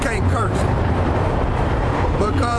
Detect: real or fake fake